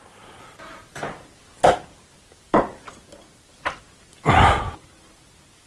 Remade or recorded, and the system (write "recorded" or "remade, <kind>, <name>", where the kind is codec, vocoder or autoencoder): recorded